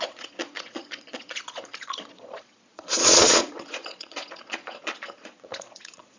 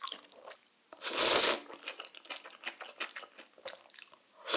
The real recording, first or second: second